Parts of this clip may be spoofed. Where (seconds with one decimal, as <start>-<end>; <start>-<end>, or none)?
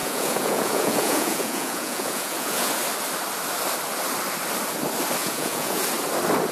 0.0-2.7; 5.2-5.8